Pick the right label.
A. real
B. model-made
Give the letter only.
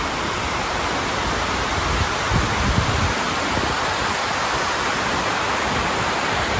A